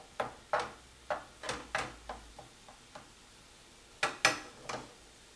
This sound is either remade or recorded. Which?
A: recorded